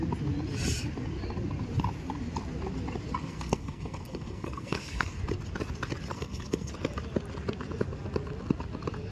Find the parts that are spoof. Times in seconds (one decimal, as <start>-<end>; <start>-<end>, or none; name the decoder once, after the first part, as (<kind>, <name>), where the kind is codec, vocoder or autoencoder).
3.2-5.2 (codec, SNAC); 6.1-6.7